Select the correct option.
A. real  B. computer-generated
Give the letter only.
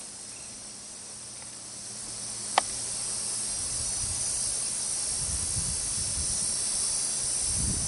A